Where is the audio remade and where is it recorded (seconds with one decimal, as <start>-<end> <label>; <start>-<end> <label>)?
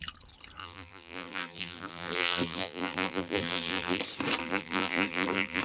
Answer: 0.0-0.6 recorded; 0.6-4.0 remade; 4.0-4.4 recorded; 4.4-5.6 remade